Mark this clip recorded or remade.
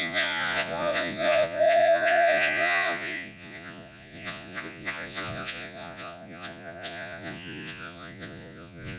remade